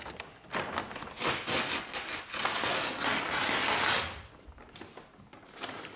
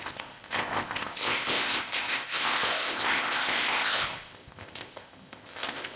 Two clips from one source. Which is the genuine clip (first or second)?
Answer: first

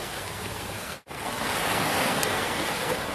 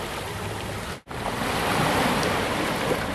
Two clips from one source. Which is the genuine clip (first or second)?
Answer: second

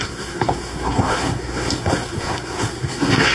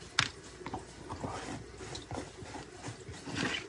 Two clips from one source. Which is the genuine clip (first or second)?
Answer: second